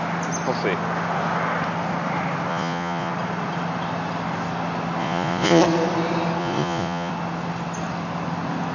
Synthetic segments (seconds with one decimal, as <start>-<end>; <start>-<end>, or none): 2.5-3.1; 5.0-5.6; 6.4-7.1